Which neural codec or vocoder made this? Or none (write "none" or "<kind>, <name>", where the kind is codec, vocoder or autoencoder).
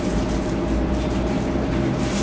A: vocoder, BigVGAN v2